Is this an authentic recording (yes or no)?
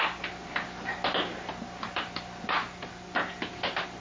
yes